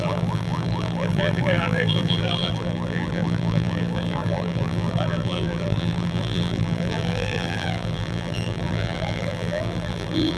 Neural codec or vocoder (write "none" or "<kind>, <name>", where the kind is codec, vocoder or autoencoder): vocoder, BigVGAN v2